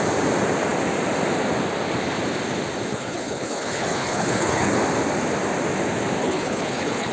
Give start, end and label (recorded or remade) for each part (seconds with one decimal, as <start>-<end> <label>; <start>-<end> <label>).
0.0-2.9 recorded; 2.9-4.7 remade; 4.7-6.2 recorded; 6.2-7.1 remade